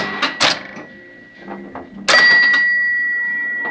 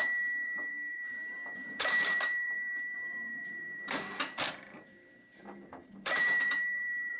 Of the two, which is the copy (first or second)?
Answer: second